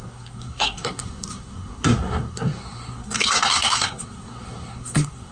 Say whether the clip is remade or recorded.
remade